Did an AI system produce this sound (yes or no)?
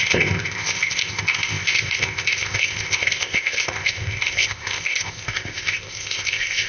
yes